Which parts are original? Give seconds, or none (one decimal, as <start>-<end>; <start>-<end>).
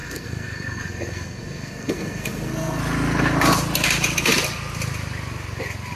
2.8-6.0